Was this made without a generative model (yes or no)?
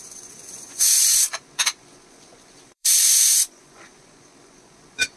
no